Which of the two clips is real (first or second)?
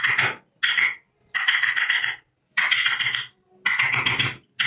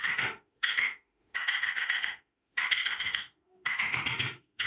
first